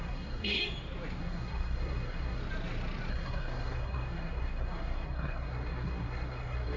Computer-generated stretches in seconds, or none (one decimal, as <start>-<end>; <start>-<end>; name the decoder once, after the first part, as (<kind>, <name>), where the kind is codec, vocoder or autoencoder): 0.0-0.6 (codec, SNAC); 1.2-2.4; 3.1-6.8